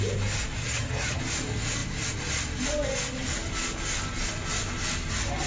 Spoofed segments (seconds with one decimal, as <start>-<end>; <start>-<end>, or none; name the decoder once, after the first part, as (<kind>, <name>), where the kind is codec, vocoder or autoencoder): 0.6-1.2 (vocoder, HiFi-GAN)